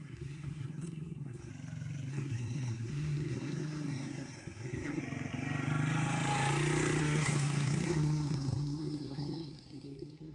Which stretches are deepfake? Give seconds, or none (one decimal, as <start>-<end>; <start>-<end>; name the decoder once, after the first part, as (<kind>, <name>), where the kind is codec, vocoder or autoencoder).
0.0-1.5 (codec, SNAC); 2.1-5.0; 7.0-10.3